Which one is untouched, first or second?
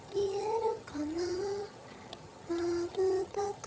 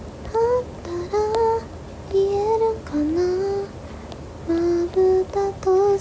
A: second